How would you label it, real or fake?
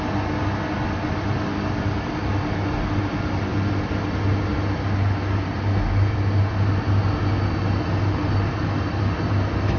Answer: real